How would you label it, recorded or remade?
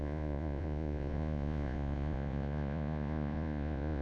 remade